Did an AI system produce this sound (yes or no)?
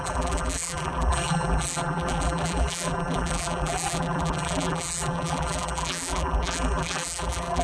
yes